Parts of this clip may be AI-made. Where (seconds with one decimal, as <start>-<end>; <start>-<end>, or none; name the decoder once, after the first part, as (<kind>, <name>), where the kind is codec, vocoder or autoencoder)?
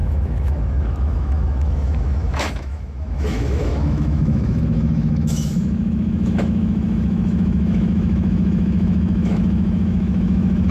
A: 0.0-10.7 (autoencoder, DAC-VAE)